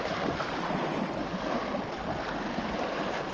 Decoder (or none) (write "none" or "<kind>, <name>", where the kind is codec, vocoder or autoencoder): none